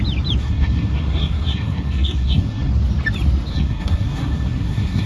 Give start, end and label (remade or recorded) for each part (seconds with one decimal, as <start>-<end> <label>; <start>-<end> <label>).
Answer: 0.0-0.4 recorded; 0.4-2.7 remade; 2.7-3.5 recorded; 3.5-5.1 remade